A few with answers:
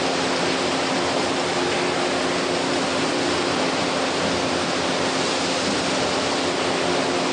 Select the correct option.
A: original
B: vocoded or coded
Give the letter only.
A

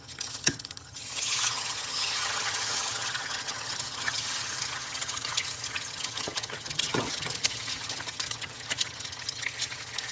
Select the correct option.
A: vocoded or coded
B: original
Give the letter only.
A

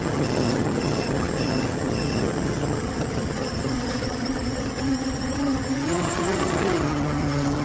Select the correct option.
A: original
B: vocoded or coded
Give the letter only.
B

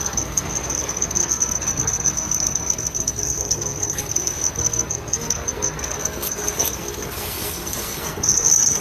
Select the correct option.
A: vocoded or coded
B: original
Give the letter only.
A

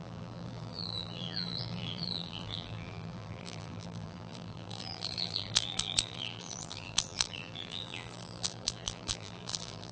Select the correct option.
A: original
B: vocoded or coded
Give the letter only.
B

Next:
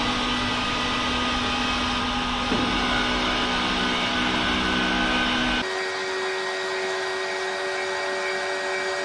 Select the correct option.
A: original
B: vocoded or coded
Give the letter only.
A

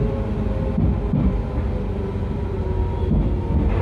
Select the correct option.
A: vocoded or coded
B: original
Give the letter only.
B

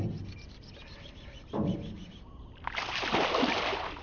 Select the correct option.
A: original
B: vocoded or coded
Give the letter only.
A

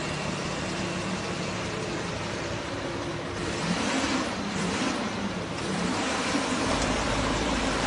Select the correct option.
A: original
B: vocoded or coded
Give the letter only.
B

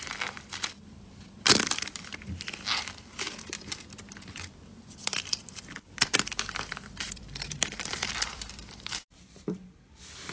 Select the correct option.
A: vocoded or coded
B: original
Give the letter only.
A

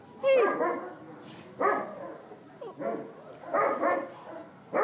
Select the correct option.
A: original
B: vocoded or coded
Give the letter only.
A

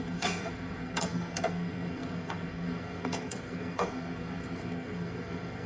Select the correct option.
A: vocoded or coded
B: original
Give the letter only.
A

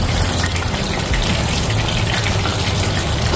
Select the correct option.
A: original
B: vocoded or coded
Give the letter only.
A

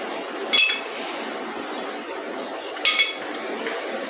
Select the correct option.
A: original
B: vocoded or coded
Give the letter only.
A